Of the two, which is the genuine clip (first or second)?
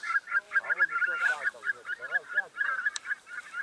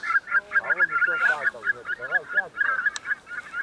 second